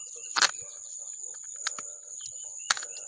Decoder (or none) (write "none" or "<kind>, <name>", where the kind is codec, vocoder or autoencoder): none